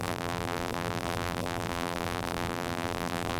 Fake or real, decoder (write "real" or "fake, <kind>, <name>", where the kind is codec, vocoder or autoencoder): fake, vocoder, BigVGAN v2